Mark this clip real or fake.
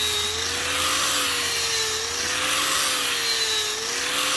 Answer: real